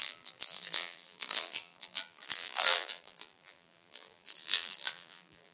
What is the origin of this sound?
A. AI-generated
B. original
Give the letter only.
A